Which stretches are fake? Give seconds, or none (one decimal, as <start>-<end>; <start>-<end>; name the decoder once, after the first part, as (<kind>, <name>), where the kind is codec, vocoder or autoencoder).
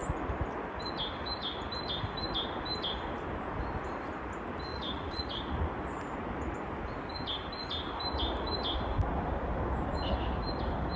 4.7-5.7 (vocoder, Vocos)